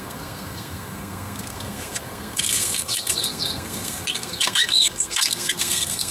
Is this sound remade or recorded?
remade